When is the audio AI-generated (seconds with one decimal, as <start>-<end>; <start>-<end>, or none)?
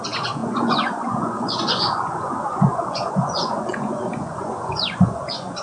0.0-5.6